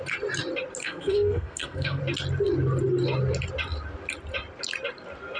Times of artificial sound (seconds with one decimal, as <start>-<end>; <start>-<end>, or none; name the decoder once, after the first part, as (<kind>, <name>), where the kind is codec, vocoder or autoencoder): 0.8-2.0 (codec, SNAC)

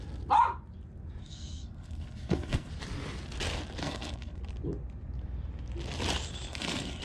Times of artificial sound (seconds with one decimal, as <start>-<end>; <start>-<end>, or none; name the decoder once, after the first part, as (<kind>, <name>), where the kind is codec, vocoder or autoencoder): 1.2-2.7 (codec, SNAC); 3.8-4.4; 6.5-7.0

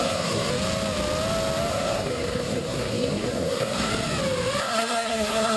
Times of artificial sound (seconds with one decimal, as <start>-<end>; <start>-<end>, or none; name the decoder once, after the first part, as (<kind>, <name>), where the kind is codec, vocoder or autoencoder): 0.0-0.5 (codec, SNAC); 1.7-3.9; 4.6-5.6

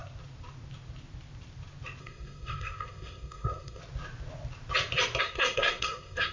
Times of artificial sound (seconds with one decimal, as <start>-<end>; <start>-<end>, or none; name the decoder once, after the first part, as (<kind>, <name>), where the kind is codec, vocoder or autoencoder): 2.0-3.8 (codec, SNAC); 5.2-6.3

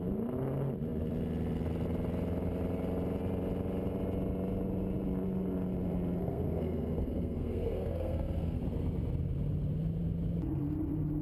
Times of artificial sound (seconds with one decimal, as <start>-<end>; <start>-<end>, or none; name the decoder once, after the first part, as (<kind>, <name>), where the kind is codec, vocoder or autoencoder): 6.2-8.6 (codec, SNAC)